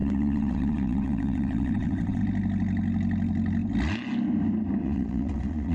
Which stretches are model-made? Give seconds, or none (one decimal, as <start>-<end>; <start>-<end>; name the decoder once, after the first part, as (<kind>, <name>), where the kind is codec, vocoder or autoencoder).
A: 0.0-2.2 (vocoder, WaveNeXt); 4.8-5.7